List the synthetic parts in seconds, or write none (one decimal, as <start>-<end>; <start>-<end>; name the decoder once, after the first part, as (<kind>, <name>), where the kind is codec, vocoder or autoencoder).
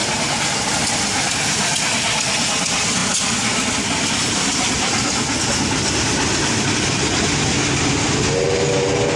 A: none